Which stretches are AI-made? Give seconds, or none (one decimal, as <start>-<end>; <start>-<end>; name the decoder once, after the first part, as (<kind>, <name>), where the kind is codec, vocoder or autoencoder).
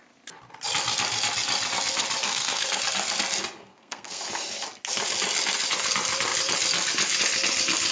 2.2-2.8 (codec, SNAC); 3.7-4.2